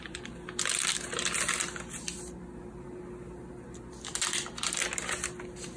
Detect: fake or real real